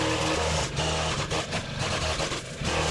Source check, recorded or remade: recorded